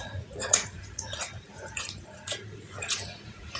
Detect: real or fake fake